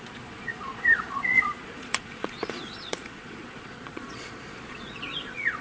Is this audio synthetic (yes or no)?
yes